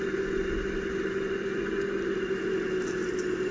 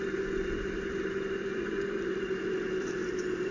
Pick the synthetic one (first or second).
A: second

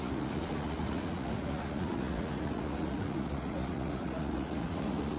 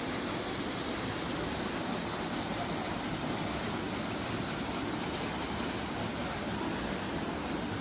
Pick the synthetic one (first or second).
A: first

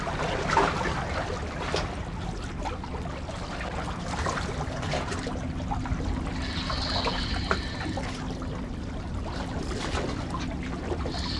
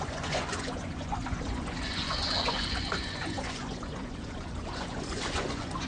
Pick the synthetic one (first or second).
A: second